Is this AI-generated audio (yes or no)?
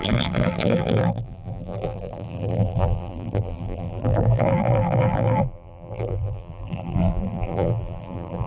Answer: yes